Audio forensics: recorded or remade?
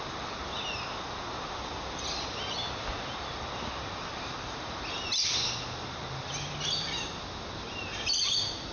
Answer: recorded